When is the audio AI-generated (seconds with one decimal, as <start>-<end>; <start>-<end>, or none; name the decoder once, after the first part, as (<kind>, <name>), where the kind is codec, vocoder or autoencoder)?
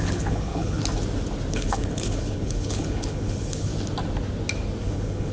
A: 0.0-0.8 (codec, HILCodec); 1.5-3.7; 4.8-5.3